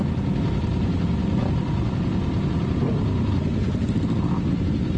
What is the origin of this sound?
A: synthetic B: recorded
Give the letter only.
B